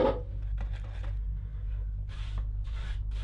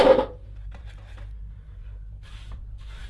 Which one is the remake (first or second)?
second